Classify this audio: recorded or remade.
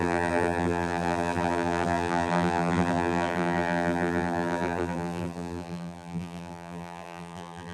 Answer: remade